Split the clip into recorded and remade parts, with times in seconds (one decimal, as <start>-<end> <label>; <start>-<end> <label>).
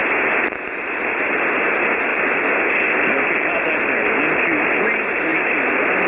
0.0-6.1 recorded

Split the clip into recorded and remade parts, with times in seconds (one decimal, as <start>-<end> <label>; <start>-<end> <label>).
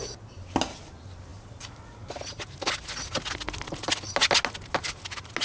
0.0-5.4 recorded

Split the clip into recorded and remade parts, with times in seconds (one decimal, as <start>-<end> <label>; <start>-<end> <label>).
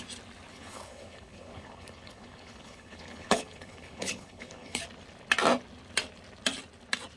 0.0-0.5 recorded; 0.5-4.8 remade; 4.8-7.2 recorded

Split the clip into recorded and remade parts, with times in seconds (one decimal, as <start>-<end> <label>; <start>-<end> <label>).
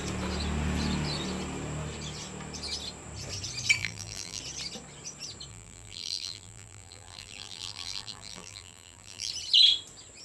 0.0-3.8 recorded; 3.8-4.4 remade; 4.4-5.5 recorded; 5.5-9.3 remade; 9.3-10.2 recorded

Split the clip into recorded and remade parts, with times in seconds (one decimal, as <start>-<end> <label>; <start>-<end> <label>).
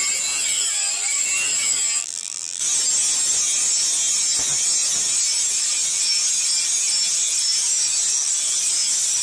0.0-2.0 recorded; 2.0-2.6 remade; 2.6-9.2 recorded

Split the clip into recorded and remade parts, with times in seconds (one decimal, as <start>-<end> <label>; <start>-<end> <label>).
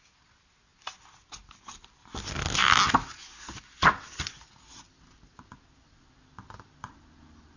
0.0-7.6 recorded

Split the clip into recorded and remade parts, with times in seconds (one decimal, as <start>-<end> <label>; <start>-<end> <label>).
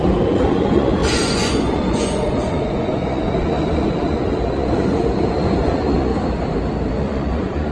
0.0-6.1 remade; 6.1-6.9 recorded; 6.9-7.7 remade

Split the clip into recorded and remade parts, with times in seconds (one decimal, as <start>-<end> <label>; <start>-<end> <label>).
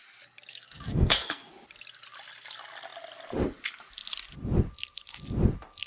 0.0-0.5 recorded; 0.5-1.5 remade; 1.5-5.9 recorded